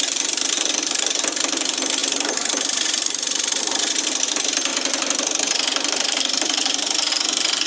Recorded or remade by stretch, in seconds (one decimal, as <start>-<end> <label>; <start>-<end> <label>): 0.0-2.0 recorded; 2.0-3.6 remade; 3.6-4.7 recorded; 4.7-7.1 remade; 7.1-7.7 recorded